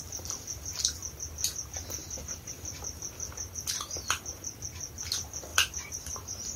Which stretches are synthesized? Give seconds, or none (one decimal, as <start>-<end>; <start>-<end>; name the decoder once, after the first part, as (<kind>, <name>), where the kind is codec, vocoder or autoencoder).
2.0-2.5 (vocoder, BigVGAN v2); 5.5-6.6